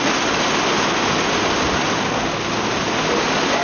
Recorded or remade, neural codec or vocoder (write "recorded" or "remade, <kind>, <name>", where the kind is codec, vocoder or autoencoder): recorded